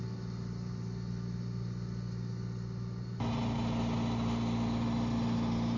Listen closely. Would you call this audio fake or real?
real